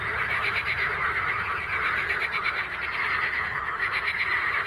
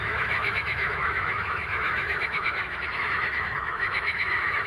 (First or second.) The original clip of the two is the first